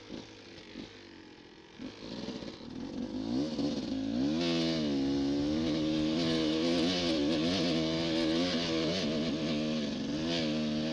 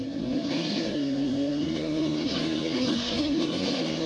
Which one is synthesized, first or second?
second